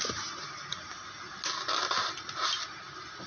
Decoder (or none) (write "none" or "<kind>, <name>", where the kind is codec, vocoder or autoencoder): none